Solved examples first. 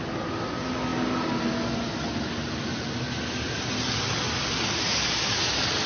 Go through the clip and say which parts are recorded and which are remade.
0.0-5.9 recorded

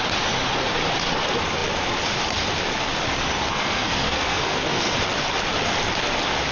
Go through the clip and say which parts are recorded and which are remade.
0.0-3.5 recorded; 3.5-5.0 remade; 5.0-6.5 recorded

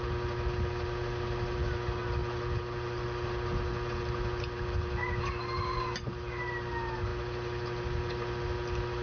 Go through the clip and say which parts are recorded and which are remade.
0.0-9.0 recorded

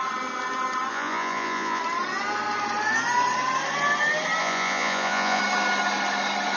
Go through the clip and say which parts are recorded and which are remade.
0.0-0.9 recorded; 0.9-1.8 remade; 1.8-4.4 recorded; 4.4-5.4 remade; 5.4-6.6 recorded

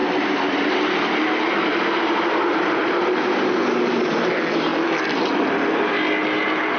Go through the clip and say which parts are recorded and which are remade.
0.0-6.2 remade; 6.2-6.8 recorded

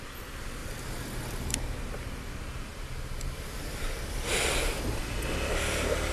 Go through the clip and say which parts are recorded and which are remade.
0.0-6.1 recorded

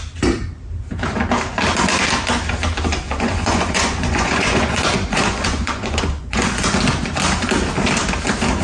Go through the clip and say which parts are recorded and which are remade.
0.0-2.9 recorded; 2.9-6.8 remade; 6.8-8.6 recorded

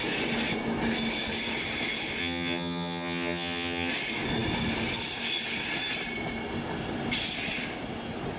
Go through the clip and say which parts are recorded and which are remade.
0.0-2.2 recorded; 2.2-3.9 remade; 3.9-8.4 recorded